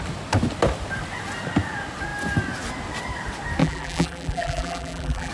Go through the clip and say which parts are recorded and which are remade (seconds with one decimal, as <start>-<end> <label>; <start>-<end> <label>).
0.0-3.6 recorded; 3.6-5.3 remade